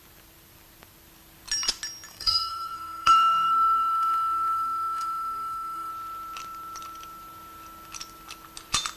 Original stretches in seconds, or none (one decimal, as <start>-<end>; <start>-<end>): 0.0-2.1; 5.9-9.0